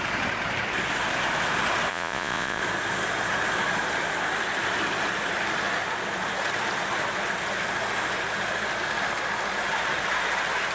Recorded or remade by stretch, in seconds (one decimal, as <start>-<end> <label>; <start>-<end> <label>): 0.0-1.9 recorded; 1.9-2.6 remade; 2.6-10.7 recorded